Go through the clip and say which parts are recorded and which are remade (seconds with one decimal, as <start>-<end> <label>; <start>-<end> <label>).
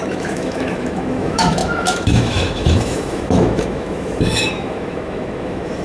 0.0-5.8 remade